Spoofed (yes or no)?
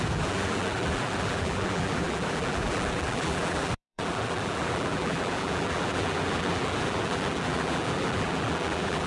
yes